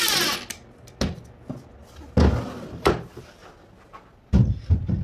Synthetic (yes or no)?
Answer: no